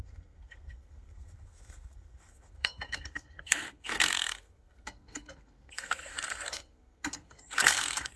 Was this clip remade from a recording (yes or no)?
yes